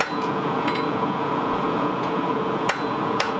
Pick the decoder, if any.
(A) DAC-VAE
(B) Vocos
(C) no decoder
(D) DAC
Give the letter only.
B